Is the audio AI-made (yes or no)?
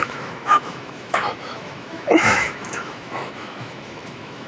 yes